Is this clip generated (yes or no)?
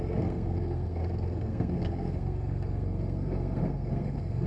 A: yes